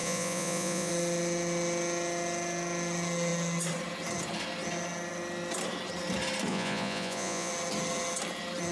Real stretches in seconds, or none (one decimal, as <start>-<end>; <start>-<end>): 0.9-6.5; 7.5-8.7